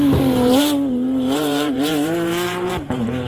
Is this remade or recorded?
remade